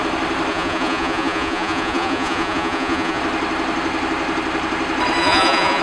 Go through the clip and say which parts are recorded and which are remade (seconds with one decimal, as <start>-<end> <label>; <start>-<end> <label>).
0.0-0.5 recorded; 0.5-3.2 remade; 3.2-5.2 recorded; 5.2-5.8 remade